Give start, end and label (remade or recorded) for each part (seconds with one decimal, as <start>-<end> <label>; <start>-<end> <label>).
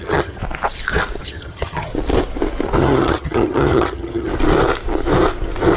0.0-0.4 remade; 0.4-1.2 recorded; 1.2-1.9 remade; 1.9-2.8 recorded; 2.8-4.3 remade; 4.3-5.8 recorded